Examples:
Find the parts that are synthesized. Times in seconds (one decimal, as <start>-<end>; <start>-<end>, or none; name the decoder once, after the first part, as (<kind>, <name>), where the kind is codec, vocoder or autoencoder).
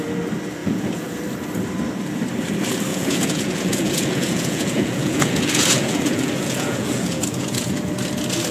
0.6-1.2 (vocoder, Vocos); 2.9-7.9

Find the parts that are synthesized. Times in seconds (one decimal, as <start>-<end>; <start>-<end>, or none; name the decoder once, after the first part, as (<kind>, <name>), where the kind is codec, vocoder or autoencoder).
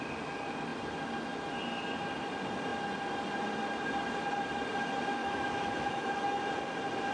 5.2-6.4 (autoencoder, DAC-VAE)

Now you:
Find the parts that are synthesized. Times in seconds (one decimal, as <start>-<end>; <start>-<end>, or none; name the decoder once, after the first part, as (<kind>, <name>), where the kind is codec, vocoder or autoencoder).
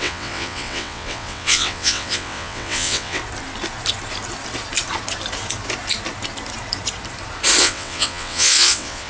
0.0-3.2 (vocoder, WaveNeXt); 7.6-9.1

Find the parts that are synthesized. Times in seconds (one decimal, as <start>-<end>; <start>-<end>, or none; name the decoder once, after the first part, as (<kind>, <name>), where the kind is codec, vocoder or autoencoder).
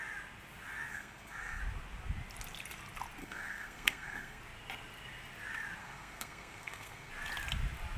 0.9-1.6 (codec, SNAC); 3.2-4.4; 5.8-7.1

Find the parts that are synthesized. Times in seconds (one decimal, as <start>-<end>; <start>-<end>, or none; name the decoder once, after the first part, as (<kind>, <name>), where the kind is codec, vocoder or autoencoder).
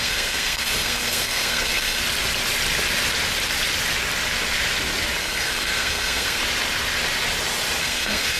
0.0-2.0 (codec, SNAC); 5.2-6.4; 7.8-8.4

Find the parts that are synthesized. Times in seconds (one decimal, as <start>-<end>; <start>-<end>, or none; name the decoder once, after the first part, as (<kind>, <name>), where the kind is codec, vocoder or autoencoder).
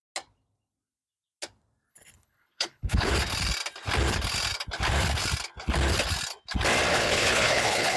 1.9-3.1 (codec, HILCodec); 6.9-8.0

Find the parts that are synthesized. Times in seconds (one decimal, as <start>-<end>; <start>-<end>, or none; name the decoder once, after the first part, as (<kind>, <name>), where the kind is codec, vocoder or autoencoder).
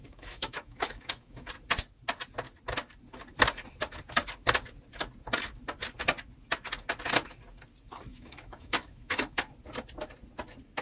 0.0-1.5 (autoencoder, DAC-VAE); 8.1-9.4